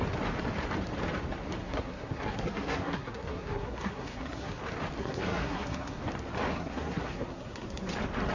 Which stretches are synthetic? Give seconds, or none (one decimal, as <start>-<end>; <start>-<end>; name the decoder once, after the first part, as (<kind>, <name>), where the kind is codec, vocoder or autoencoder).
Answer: 1.6-4.6 (codec, SNAC); 5.0-6.0; 6.5-7.8